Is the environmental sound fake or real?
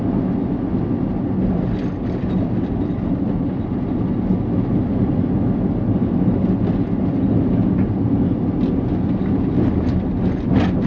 real